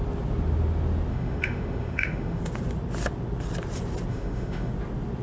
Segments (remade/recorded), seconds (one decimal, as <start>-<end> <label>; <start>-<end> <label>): 0.0-1.1 recorded; 1.1-2.4 remade; 2.4-4.1 recorded; 4.1-4.7 remade; 4.7-5.2 recorded